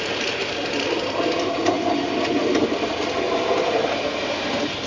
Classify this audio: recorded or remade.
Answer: recorded